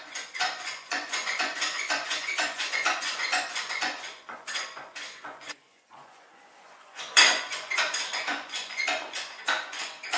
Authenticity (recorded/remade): remade